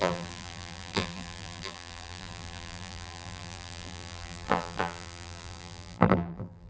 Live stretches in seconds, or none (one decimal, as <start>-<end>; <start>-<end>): none